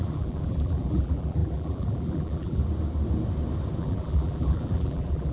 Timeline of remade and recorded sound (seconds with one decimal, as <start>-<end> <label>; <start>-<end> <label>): 0.0-2.6 remade; 2.6-3.8 recorded; 3.8-5.3 remade